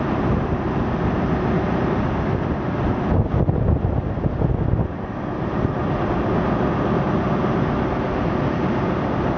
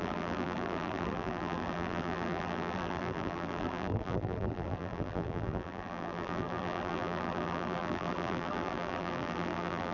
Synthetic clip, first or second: second